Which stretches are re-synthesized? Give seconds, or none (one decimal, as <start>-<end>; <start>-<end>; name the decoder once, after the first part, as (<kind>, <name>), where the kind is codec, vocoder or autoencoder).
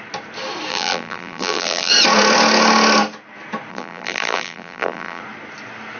0.7-1.9 (vocoder, BigVGAN v2); 3.7-5.2